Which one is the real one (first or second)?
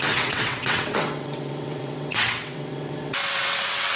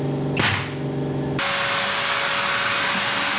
second